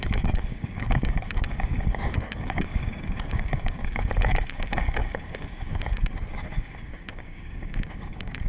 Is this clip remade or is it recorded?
remade